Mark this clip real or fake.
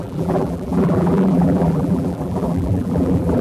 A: fake